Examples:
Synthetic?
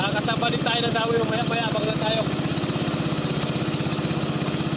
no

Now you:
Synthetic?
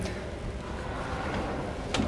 no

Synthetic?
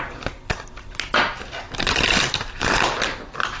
no